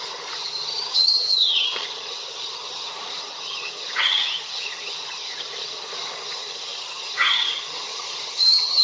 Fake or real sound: fake